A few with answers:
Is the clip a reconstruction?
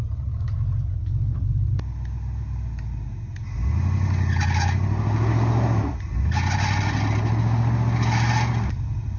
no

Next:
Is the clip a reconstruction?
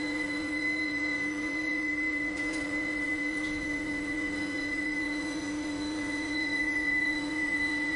yes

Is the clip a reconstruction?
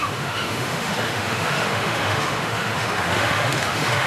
yes